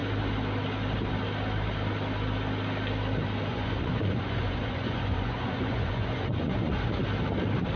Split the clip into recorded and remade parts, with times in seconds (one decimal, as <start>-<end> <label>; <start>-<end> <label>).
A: 0.0-3.5 recorded; 3.5-7.0 remade; 7.0-7.8 recorded